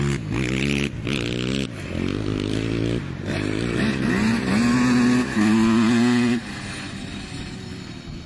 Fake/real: real